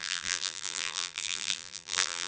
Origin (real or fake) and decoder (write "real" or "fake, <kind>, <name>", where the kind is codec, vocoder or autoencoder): fake, vocoder, BigVGAN v2